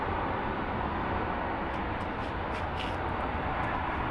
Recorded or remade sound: recorded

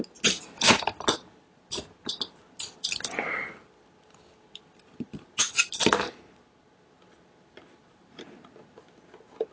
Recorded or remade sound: recorded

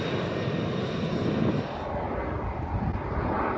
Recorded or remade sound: recorded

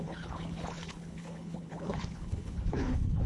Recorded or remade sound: remade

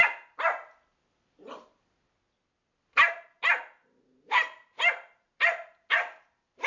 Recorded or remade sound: recorded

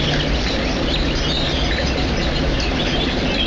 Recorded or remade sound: recorded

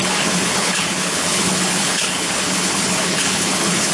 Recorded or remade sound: remade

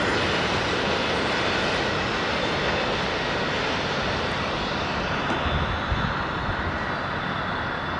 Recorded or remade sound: recorded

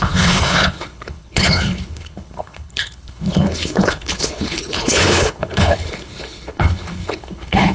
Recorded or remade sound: remade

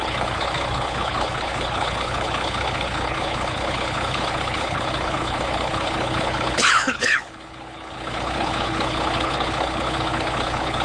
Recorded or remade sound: remade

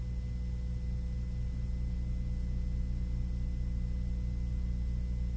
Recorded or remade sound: recorded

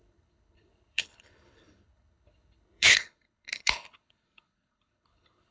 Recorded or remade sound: remade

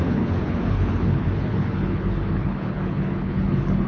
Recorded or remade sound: remade